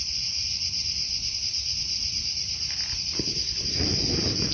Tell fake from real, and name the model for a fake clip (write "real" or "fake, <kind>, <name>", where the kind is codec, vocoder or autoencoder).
fake, vocoder, BigVGAN v2